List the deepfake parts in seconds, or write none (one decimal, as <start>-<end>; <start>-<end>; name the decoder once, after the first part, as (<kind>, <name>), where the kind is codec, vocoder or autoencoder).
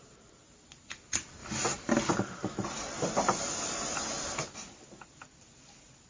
none